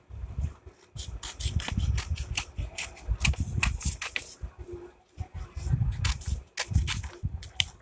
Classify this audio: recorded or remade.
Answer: recorded